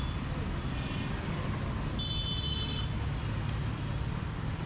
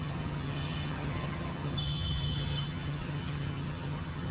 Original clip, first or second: first